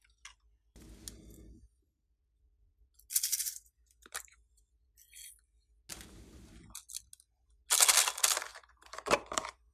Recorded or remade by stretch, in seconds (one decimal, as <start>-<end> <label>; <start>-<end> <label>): 0.0-3.3 recorded; 3.3-4.6 remade; 4.6-5.9 recorded; 5.9-6.5 remade; 6.5-8.5 recorded; 8.5-9.7 remade